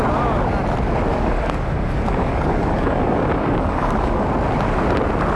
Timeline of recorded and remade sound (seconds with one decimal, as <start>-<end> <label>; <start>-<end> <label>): 0.0-1.1 recorded; 1.1-4.3 remade; 4.3-5.4 recorded